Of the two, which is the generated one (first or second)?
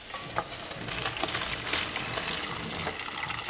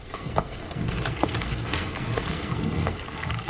second